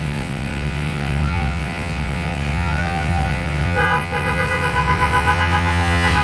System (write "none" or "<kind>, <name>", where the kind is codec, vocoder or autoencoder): vocoder, WaveNeXt